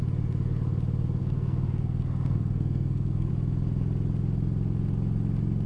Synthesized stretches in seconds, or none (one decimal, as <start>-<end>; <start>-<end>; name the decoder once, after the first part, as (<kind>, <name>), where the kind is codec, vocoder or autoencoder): 1.2-3.3 (codec, SNAC)